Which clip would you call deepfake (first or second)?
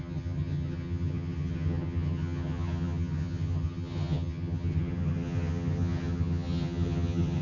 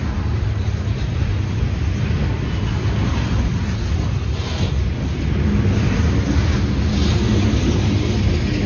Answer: first